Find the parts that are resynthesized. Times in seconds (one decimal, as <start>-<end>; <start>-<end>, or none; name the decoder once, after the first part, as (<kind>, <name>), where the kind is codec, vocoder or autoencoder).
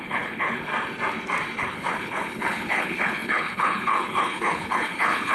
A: 0.0-0.7 (codec, HILCodec); 1.6-5.3